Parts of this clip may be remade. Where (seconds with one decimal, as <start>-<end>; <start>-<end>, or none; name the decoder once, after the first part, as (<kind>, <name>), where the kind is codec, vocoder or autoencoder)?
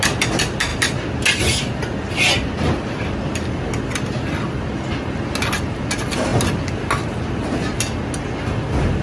none